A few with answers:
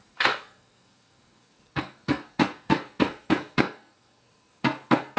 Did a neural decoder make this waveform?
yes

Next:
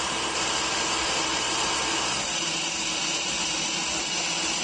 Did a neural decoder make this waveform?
yes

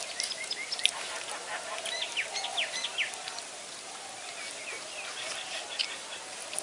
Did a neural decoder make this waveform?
no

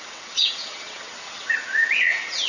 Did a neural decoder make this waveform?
yes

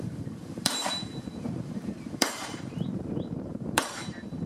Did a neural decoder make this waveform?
yes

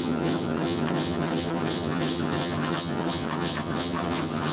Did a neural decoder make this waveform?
yes